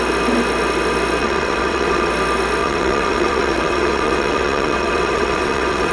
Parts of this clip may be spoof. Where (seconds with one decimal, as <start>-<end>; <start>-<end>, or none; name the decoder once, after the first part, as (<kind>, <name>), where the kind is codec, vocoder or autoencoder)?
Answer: 1.2-2.1 (vocoder, WaveNeXt); 2.6-5.9